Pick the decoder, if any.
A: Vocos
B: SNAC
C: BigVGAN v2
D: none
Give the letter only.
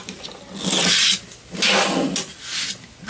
D